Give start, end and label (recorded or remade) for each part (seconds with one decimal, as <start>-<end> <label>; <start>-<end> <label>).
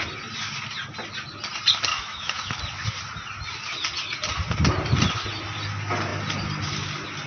0.0-1.9 recorded; 1.9-2.6 remade; 2.6-7.3 recorded